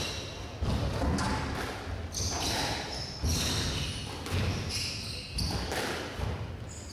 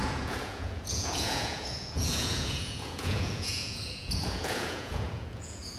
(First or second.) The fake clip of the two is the second